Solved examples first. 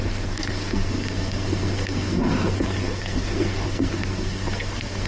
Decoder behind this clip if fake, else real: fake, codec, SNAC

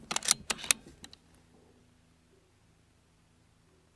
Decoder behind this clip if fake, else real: real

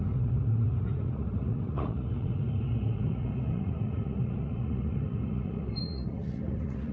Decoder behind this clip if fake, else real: fake, vocoder, Vocos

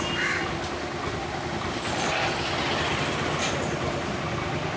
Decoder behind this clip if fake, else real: real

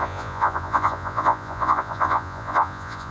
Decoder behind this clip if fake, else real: fake, vocoder, Vocos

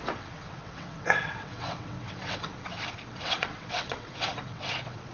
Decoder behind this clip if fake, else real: fake, vocoder, WaveNeXt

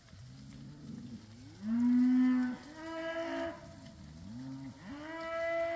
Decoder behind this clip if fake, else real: real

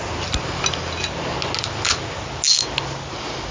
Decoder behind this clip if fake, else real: real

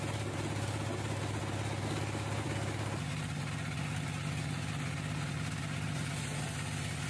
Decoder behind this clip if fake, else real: real